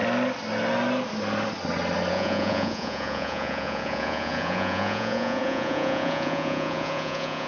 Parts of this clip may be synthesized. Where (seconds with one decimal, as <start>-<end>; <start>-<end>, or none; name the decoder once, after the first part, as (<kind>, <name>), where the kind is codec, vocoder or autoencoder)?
2.1-7.5 (vocoder, Vocos)